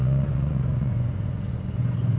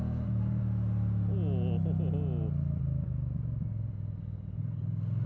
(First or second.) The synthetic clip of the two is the first